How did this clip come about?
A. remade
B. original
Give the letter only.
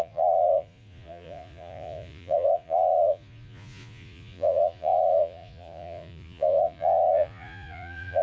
A